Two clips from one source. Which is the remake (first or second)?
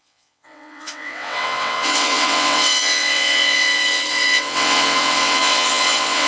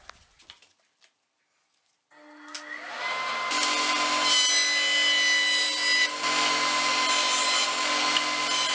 first